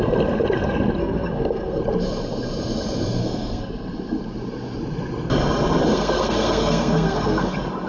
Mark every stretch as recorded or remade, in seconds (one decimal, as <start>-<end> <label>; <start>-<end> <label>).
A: 0.0-1.0 recorded; 1.0-1.8 remade; 1.8-3.2 recorded; 3.2-3.7 remade; 3.7-5.9 recorded; 5.9-7.5 remade; 7.5-7.9 recorded